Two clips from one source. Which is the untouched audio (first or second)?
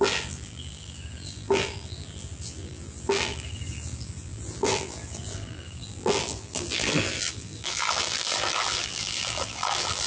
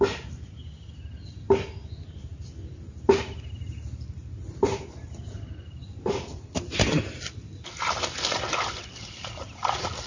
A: second